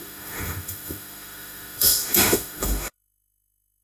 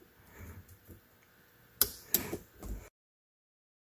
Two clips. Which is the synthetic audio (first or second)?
first